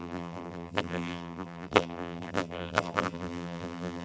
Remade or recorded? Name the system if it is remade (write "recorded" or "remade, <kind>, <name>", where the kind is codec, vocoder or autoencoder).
remade, vocoder, BigVGAN v2